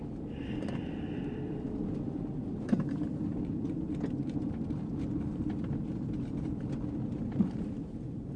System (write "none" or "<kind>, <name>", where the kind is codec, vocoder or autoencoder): vocoder, BigVGAN v2